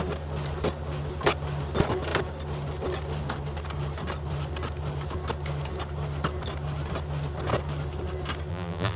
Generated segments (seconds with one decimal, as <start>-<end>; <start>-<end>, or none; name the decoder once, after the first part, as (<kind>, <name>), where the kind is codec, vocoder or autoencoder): 8.5-9.0 (vocoder, BigVGAN v2)